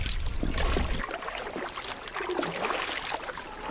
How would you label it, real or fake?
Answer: real